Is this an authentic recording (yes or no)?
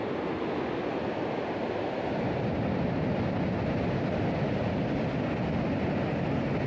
yes